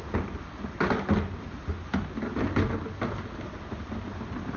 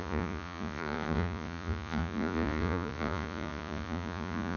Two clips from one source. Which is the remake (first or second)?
second